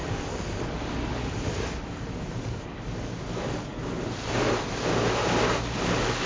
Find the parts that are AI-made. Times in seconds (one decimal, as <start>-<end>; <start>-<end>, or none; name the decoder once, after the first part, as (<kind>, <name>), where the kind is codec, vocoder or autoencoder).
0.0-3.8 (codec, DAC)